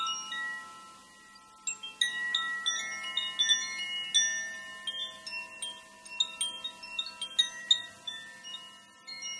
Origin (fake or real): real